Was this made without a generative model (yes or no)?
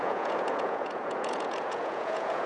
no